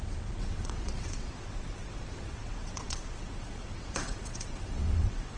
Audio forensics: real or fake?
fake